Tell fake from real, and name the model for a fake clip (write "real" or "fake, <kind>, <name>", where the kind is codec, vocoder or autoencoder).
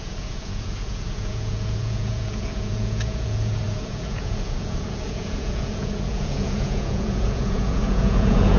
fake, vocoder, Vocos